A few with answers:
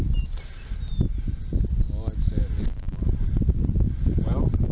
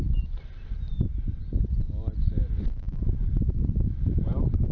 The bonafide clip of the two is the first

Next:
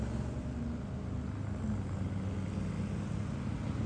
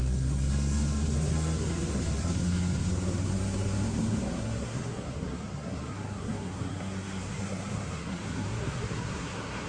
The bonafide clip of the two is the first